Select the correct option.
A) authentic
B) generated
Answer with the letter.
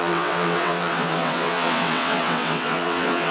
B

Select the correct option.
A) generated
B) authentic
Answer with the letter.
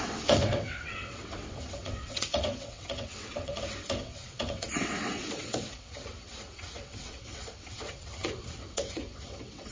A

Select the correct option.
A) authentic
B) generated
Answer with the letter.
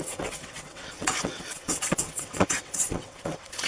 B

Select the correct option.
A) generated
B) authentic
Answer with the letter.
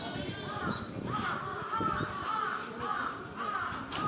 B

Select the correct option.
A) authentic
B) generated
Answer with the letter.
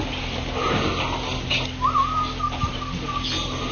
A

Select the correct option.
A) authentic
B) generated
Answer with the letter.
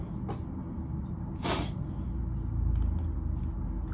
A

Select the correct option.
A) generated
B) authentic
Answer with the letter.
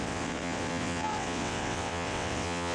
A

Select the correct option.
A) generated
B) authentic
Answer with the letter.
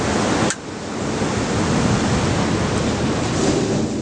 B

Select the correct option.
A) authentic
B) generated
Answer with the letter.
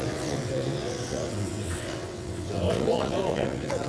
B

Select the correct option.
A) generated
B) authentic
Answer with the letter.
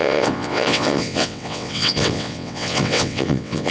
A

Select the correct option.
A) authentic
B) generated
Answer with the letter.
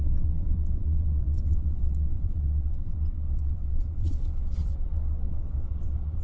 B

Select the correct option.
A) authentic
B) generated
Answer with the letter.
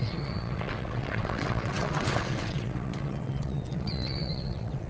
B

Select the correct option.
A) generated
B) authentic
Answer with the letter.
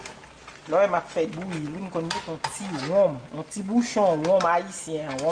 B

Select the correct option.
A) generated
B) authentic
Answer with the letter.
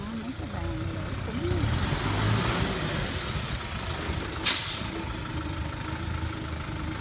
B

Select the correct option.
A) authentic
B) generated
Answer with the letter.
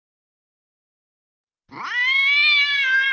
A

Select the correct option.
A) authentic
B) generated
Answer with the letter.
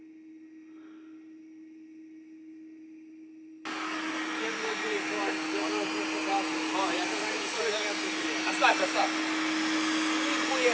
A